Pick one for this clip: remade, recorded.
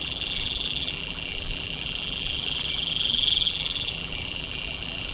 remade